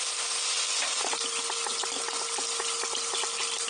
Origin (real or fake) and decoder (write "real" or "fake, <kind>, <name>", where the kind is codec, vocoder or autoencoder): real